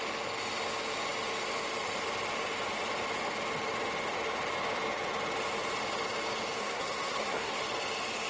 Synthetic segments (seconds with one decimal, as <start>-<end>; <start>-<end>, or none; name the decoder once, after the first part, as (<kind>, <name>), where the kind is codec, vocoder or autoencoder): 6.6-7.6 (codec, SNAC)